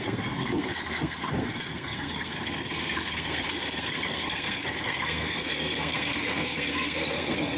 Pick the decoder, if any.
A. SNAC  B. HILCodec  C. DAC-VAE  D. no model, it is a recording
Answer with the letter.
A